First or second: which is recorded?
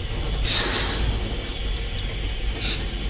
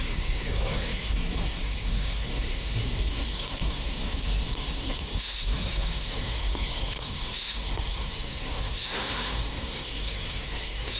first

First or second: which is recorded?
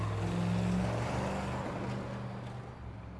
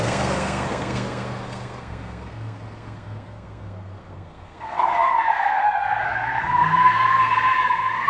first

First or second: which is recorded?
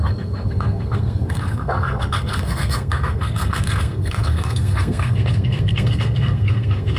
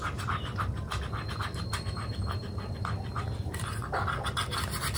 second